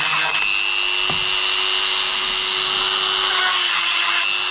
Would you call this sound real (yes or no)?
yes